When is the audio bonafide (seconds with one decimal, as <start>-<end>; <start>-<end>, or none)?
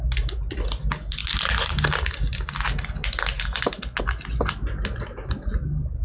0.0-6.0